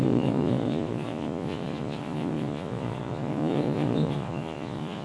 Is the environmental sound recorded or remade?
remade